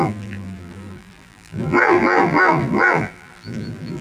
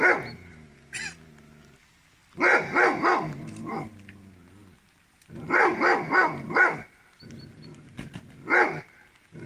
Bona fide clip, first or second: second